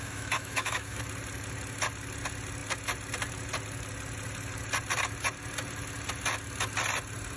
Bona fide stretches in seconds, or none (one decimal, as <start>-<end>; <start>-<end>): 1.0-7.4